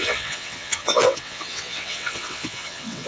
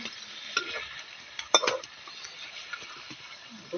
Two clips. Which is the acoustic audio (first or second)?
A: second